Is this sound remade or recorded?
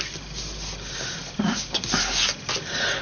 recorded